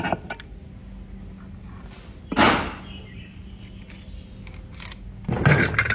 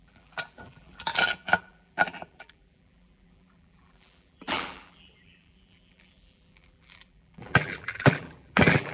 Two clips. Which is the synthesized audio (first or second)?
second